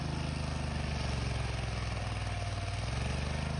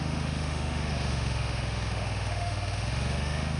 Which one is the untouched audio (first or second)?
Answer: first